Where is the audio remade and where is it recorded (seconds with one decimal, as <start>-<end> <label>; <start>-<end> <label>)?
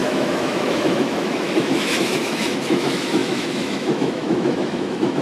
0.0-5.2 remade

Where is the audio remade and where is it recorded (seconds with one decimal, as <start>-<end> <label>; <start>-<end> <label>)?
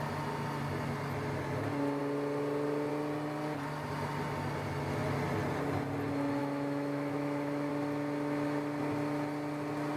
0.0-6.4 recorded; 6.4-7.7 remade; 7.7-10.0 recorded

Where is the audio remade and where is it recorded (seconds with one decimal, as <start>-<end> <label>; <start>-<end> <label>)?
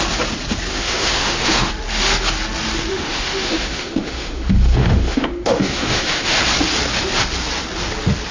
0.0-0.7 recorded; 0.7-1.7 remade; 1.7-2.9 recorded; 2.9-6.4 remade; 6.4-8.3 recorded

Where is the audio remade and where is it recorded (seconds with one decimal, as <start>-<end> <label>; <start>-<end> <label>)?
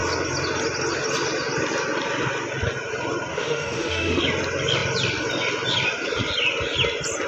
0.0-3.3 recorded; 3.3-4.2 remade; 4.2-7.3 recorded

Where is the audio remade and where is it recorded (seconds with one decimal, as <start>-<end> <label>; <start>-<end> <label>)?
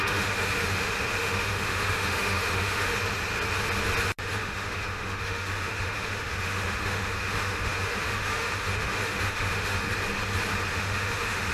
0.0-2.9 remade; 2.9-4.4 recorded; 4.4-9.9 remade; 9.9-10.7 recorded; 10.7-11.5 remade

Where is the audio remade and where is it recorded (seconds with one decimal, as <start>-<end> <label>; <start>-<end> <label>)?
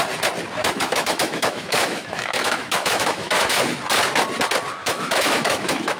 0.0-0.6 recorded; 0.6-3.6 remade; 3.6-4.8 recorded; 4.8-6.0 remade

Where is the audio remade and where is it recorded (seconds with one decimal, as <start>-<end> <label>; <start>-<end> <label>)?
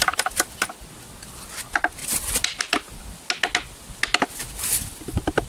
0.0-5.5 recorded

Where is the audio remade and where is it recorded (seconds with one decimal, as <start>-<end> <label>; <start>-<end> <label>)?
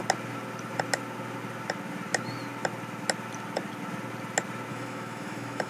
0.0-4.7 recorded; 4.7-5.7 remade